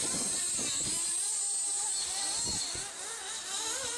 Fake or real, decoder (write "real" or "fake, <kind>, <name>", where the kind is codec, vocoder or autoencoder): real